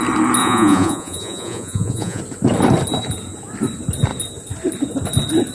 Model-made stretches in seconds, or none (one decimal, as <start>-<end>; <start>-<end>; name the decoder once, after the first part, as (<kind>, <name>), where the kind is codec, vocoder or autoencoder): 0.4-2.2 (vocoder, Vocos)